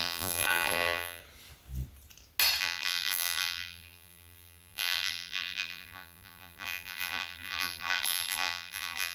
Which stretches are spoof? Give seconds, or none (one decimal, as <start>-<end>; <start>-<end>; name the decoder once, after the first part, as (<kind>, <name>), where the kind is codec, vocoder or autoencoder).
0.0-1.2 (vocoder, BigVGAN v2); 2.6-9.1